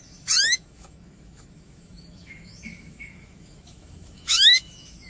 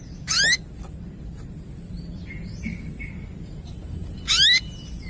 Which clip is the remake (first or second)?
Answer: first